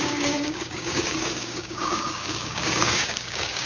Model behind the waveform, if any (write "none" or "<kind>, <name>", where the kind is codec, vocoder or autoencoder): codec, DAC